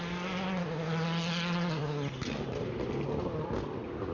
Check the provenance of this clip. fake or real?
real